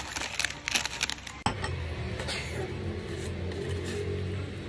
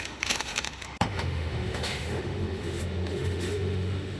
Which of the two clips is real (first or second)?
first